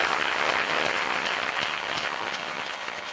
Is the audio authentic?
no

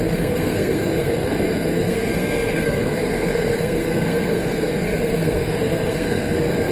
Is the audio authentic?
no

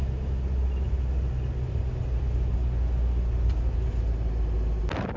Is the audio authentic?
yes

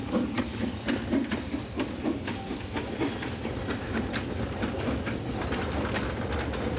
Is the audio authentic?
yes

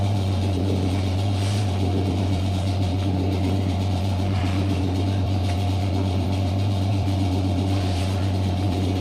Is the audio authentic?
no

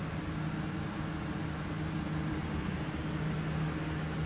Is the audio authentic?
yes